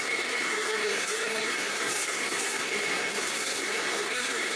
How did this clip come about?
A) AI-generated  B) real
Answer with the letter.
A